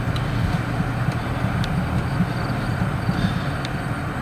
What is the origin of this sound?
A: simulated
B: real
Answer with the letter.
B